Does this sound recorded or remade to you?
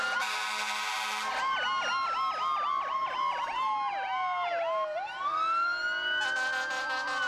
recorded